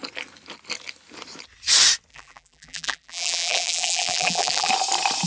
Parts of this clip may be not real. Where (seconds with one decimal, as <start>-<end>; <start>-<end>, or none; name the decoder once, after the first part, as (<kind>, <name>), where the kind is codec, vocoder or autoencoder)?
2.1-4.7 (vocoder, BigVGAN v2)